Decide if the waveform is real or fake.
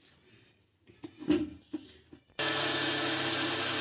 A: real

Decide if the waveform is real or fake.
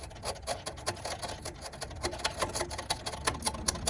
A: real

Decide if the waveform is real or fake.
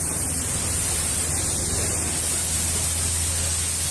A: real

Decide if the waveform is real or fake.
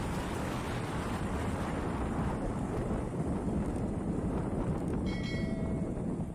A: fake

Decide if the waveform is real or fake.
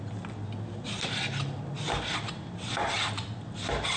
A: real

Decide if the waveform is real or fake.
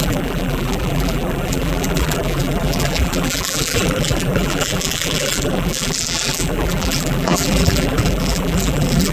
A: fake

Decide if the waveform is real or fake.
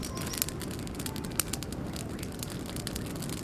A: real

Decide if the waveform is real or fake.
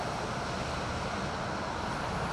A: real